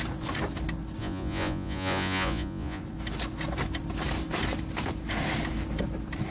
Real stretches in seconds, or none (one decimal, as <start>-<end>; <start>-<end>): 0.0-1.0; 2.8-6.3